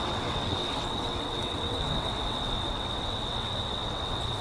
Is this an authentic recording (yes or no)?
no